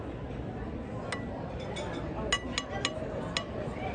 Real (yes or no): yes